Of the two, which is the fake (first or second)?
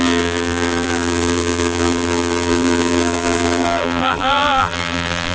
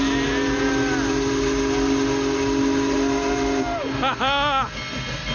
first